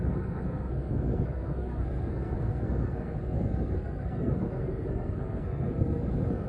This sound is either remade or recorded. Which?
remade